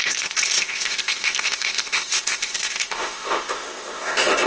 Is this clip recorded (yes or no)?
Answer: no